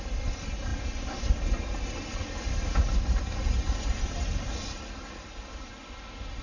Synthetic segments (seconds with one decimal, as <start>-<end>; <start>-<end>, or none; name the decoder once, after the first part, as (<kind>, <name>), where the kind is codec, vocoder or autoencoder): none